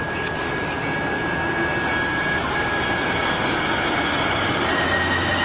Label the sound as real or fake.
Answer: real